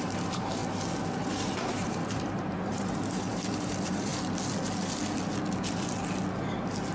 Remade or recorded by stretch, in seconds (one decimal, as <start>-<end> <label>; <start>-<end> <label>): 0.0-0.6 remade; 0.6-1.2 recorded; 1.2-4.1 remade; 4.1-6.9 recorded